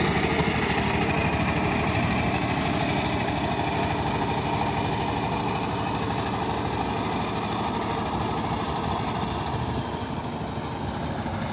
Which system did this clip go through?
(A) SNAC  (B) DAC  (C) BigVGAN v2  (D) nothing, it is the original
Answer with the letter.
D